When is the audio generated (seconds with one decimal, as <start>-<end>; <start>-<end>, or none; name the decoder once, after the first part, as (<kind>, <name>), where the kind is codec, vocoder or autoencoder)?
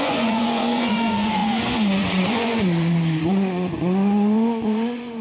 0.0-5.2 (vocoder, Vocos)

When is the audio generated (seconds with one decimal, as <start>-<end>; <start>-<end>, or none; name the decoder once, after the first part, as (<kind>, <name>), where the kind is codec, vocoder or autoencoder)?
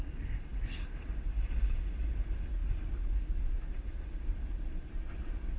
none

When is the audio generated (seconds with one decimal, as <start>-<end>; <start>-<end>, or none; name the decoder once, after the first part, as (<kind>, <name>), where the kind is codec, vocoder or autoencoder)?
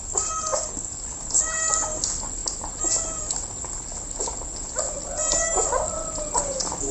none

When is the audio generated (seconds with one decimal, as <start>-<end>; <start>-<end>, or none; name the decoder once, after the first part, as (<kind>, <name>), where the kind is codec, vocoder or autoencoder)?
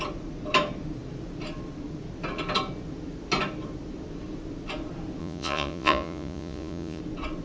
5.2-7.0 (vocoder, Vocos)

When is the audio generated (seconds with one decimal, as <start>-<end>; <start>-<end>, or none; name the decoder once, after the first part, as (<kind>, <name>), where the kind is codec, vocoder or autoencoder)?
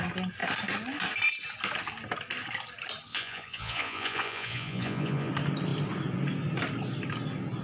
3.1-5.3 (vocoder, Vocos)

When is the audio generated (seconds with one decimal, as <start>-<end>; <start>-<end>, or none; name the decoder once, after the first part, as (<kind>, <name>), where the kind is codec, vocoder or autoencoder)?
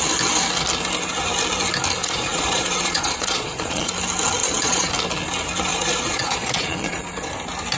2.0-3.9 (vocoder, Vocos); 4.4-4.9; 5.7-7.3